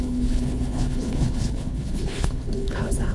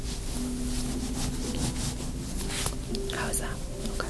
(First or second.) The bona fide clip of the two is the second